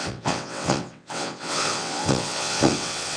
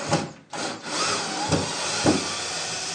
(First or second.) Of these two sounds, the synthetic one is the first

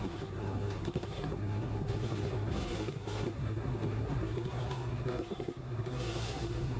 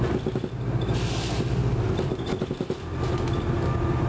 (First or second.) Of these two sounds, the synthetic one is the first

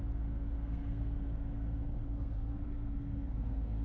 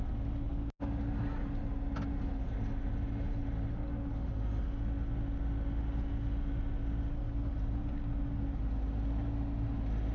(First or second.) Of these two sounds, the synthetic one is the first